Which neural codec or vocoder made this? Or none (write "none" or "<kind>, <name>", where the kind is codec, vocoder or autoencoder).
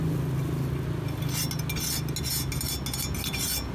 none